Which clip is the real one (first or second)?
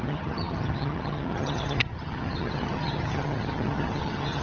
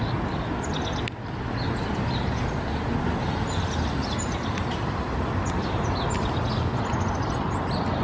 second